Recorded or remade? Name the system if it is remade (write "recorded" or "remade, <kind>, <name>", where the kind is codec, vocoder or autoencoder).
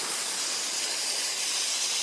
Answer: recorded